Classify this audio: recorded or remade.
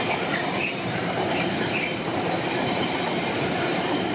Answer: remade